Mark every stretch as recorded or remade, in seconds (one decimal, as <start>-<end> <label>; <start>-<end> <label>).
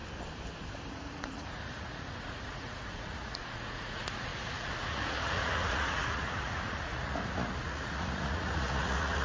0.0-0.9 recorded; 0.9-9.2 remade